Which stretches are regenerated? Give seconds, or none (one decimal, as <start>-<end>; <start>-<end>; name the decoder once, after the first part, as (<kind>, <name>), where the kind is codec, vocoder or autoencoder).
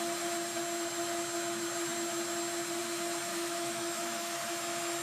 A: 3.3-4.5 (autoencoder, DAC-VAE)